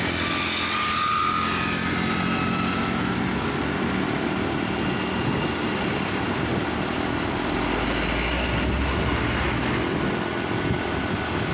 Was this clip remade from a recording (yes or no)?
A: no